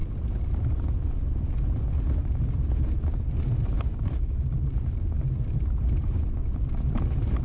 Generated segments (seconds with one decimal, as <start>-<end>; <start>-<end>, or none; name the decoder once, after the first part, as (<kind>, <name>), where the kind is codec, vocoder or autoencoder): none